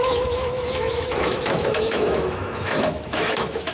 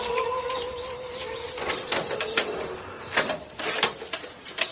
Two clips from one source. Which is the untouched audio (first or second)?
second